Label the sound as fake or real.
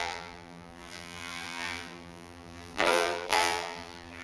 fake